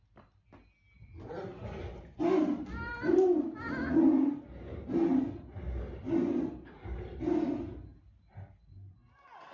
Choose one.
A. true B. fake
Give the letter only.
A